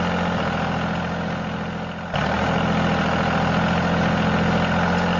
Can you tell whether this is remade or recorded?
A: recorded